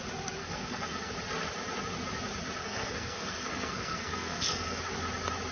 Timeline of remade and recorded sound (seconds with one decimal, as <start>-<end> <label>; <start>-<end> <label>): 0.0-0.4 recorded; 0.4-1.1 remade; 1.1-2.6 recorded; 2.6-4.8 remade; 4.8-5.5 recorded